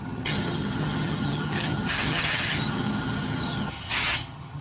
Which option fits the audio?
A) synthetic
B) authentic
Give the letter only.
A